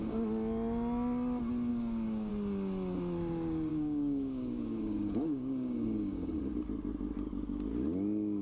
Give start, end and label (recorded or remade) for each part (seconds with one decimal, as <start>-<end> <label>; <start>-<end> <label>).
0.0-1.7 recorded; 1.7-2.3 remade; 2.3-3.7 recorded; 3.7-6.4 remade; 6.4-8.4 recorded

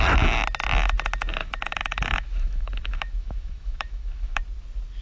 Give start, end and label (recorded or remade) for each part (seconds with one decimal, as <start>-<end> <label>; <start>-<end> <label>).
0.0-1.4 recorded; 1.4-4.4 remade; 4.4-5.0 recorded

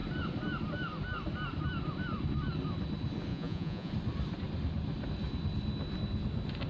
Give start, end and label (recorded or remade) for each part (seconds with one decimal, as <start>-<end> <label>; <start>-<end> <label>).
0.0-3.3 recorded; 3.3-3.9 remade; 3.9-6.7 recorded